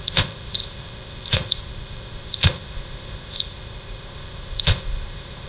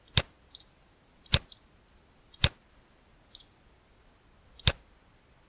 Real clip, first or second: second